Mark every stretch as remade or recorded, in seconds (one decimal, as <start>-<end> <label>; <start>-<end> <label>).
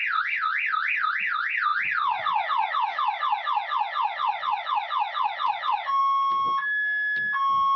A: 0.0-7.8 recorded